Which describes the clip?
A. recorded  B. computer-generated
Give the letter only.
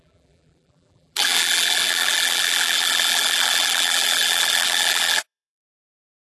B